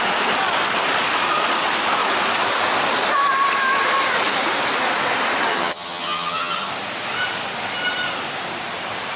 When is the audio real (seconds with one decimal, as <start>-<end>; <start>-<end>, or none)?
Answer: 0.0-5.5; 6.7-9.2